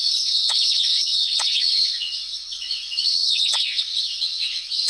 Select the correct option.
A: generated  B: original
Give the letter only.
A